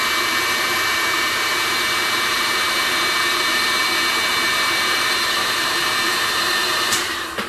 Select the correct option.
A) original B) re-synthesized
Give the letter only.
B